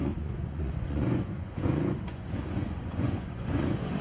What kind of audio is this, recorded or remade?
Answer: remade